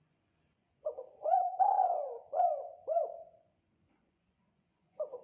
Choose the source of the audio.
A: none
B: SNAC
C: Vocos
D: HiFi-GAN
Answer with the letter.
C